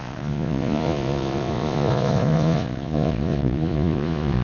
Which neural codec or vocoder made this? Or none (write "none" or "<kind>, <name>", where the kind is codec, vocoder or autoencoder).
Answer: vocoder, Vocos